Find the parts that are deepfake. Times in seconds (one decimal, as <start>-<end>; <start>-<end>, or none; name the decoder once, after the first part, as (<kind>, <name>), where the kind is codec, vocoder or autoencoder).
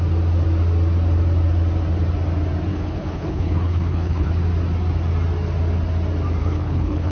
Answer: 2.7-4.3 (codec, HILCodec); 6.4-7.1